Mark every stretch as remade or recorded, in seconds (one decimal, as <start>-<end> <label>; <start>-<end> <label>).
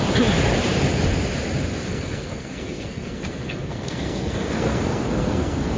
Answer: 0.0-1.9 recorded; 1.9-5.8 remade